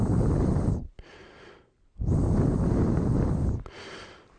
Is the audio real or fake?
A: real